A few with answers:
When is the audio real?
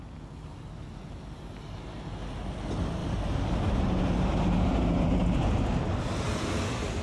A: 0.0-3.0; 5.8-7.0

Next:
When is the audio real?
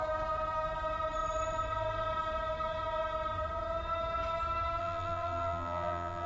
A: 0.0-4.8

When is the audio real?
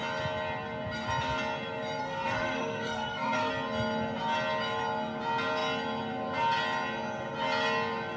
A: 0.0-2.0; 3.5-8.2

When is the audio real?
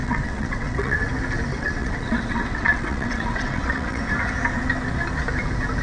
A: 1.1-1.5; 4.0-5.8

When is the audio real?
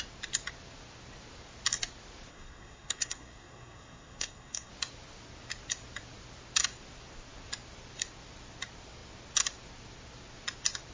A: 0.0-2.3; 4.7-10.9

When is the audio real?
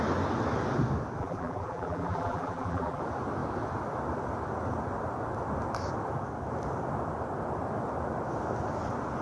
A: 0.0-1.2; 3.0-9.2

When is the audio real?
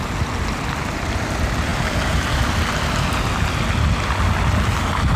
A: 0.0-5.2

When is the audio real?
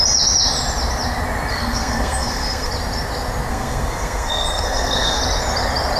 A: 0.0-1.5; 2.7-3.5; 5.2-6.0